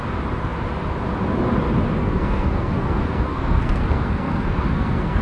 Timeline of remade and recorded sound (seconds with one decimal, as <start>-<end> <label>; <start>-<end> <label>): 0.0-2.0 recorded; 2.0-5.2 remade